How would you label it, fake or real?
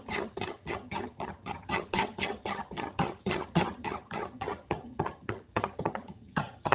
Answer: fake